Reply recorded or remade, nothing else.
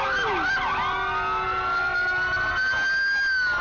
recorded